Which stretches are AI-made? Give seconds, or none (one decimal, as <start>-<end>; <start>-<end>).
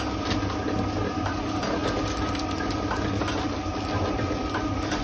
none